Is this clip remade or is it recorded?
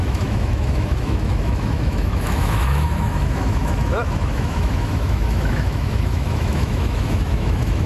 remade